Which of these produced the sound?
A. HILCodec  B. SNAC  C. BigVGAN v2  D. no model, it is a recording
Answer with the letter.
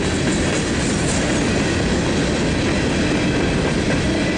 D